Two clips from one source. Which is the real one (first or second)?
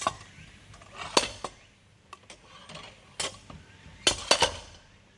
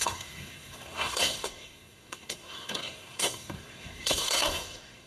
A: first